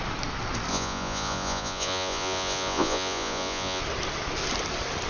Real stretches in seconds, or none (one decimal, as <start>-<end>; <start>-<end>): 0.0-0.7; 3.8-5.1